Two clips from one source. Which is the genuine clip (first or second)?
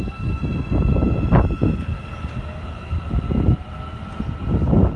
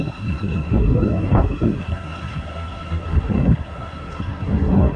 first